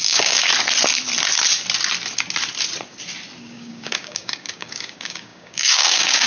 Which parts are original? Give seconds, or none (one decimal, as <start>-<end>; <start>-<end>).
0.5-3.4